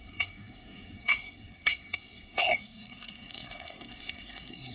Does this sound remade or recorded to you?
remade